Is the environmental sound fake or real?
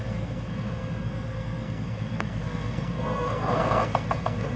fake